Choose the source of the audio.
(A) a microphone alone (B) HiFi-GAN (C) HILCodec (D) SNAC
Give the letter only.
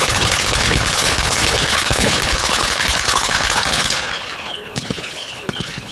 C